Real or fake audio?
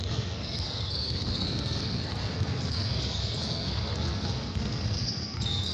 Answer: fake